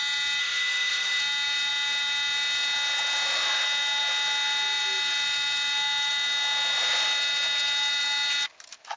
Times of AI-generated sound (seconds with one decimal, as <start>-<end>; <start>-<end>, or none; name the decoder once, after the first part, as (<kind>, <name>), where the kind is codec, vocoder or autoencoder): 0.4-1.2 (autoencoder, DAC-VAE)